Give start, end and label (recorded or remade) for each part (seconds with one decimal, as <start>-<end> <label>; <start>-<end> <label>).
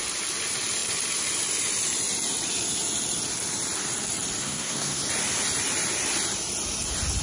0.0-4.4 recorded; 4.4-5.0 remade; 5.0-7.2 recorded